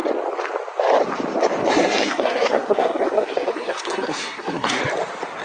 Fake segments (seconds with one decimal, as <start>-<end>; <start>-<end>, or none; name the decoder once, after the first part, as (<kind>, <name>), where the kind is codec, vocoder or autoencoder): 1.6-4.8 (codec, SNAC)

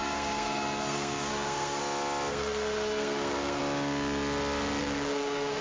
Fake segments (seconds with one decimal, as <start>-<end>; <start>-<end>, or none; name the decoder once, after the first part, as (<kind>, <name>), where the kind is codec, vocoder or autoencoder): 0.0-1.8 (codec, SNAC); 2.3-3.6; 4.8-5.6

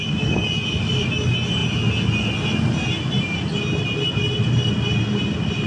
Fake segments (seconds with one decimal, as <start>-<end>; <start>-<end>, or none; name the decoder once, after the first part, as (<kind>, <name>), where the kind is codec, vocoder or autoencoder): none

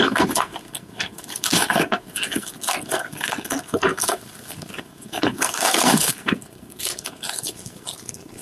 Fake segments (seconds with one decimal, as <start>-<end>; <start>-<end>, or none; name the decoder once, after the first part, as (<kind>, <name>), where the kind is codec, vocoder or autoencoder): 0.0-8.4 (codec, SNAC)

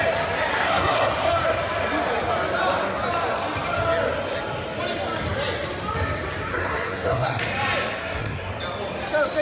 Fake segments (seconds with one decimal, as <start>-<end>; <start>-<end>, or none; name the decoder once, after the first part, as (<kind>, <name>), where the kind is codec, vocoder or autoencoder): 0.5-1.1 (codec, SNAC); 6.5-7.4; 8.0-8.5

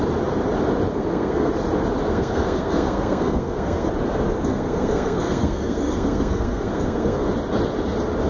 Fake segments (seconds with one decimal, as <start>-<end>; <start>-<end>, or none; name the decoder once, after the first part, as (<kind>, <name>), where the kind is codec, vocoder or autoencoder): 0.9-1.5 (codec, SNAC); 2.1-3.9; 4.5-7.3

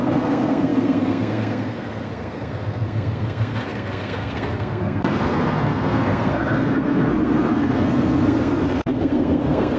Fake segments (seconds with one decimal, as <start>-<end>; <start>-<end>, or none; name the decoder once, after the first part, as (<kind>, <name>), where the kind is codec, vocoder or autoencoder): 0.0-9.8 (codec, SNAC)

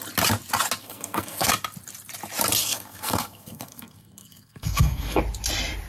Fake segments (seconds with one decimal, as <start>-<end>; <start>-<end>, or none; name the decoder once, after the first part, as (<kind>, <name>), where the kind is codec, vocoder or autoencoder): 0.8-1.5 (codec, SNAC); 2.6-5.2